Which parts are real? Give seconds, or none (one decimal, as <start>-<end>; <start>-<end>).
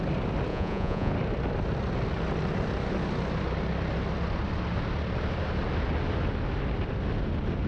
0.0-0.5; 1.1-7.7